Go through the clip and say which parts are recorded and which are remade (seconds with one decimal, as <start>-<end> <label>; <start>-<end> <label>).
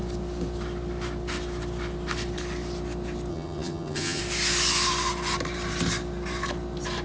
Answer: 0.0-3.3 recorded; 3.3-4.2 remade; 4.2-7.0 recorded